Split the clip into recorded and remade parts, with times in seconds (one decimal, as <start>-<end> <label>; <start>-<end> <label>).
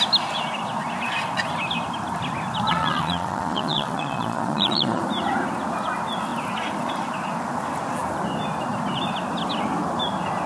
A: 0.0-2.7 recorded; 2.7-5.0 remade; 5.0-10.5 recorded